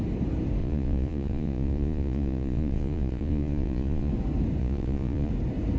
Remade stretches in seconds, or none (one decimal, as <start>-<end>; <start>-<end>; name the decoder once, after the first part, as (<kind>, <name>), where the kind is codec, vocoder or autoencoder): 0.6-4.1 (vocoder, Vocos); 4.6-5.3